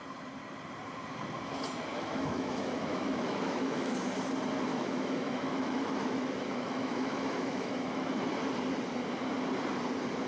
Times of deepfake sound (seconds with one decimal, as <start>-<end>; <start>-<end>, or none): 1.9-4.0; 4.7-8.2